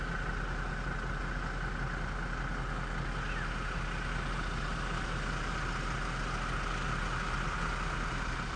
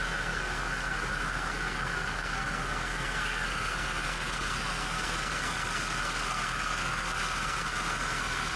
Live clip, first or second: first